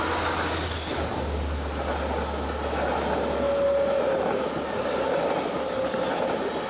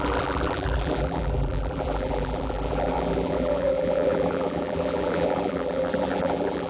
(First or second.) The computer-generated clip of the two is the second